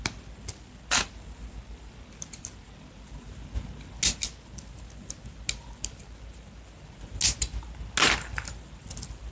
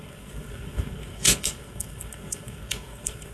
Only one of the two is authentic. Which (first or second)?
first